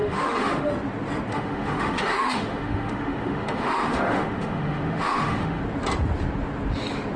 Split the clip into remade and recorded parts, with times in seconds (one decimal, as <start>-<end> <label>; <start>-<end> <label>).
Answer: 0.0-0.7 remade; 0.7-1.3 recorded; 1.3-5.6 remade; 5.6-7.2 recorded